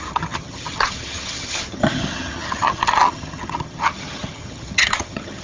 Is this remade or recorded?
remade